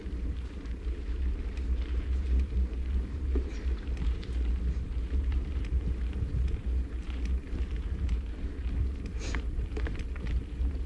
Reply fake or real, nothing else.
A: fake